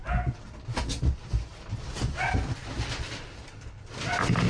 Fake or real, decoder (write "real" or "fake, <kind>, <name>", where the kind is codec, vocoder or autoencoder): real